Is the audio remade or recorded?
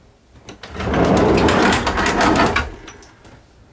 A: recorded